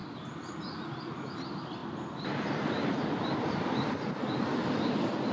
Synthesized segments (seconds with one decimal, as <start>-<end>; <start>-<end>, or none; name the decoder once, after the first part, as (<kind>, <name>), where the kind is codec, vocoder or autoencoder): none

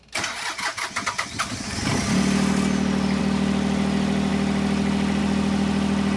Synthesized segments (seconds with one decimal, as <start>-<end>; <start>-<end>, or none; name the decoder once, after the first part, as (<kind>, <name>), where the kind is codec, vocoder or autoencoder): none

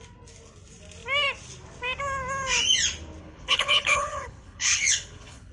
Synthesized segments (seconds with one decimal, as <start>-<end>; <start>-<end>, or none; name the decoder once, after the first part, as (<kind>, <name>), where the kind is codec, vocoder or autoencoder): 3.2-5.5 (codec, HILCodec)

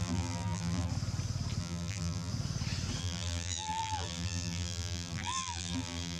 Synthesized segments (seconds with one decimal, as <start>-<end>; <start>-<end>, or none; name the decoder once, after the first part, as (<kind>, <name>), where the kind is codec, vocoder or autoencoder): 0.0-0.9 (vocoder, BigVGAN v2); 1.6-2.3; 3.0-6.2

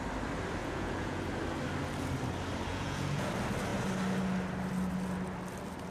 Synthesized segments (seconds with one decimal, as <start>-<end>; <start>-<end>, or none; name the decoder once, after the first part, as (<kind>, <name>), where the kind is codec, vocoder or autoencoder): 0.6-1.2 (vocoder, Vocos); 2.7-3.3

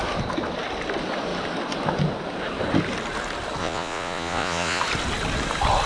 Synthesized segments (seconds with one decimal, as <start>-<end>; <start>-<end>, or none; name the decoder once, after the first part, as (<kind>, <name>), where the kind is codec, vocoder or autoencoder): 3.6-4.8 (vocoder, Vocos)

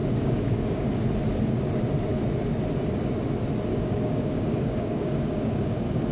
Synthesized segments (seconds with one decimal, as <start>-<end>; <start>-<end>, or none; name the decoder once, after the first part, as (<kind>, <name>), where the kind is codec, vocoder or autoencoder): 0.0-0.9 (codec, DAC); 3.7-6.1